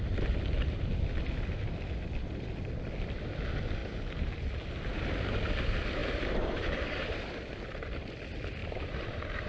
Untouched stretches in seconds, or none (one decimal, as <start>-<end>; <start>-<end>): 0.0-3.8; 4.4-6.0; 7.2-8.6